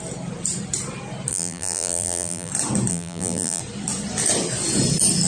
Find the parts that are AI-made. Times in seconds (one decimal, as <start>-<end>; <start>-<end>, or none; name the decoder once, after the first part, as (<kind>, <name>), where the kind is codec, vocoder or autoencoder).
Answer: 1.3-2.5 (vocoder, BigVGAN v2); 2.9-3.6

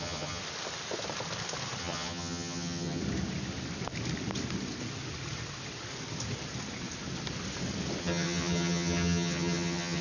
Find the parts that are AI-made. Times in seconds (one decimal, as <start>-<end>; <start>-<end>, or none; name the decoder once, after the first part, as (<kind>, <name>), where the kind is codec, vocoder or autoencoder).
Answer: 0.0-0.4 (vocoder, HiFi-GAN); 1.8-3.0; 8.0-10.0

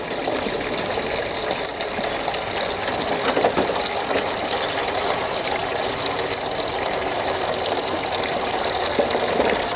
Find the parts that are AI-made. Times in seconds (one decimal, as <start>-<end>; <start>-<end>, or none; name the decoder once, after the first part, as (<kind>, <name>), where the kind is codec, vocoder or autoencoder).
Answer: 0.0-1.7 (vocoder, BigVGAN v2); 3.8-5.6; 6.7-9.8

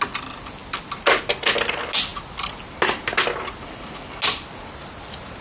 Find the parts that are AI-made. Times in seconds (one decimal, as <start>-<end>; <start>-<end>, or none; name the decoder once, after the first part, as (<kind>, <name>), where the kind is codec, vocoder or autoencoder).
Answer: none

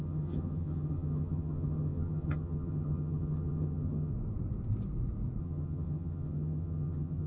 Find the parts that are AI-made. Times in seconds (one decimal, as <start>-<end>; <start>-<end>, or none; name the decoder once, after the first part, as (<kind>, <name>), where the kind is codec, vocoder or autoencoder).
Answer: 0.0-4.1 (vocoder, HiFi-GAN); 5.4-7.3